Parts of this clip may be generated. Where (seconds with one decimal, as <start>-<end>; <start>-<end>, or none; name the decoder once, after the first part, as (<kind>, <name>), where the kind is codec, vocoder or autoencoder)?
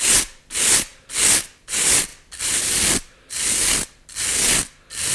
none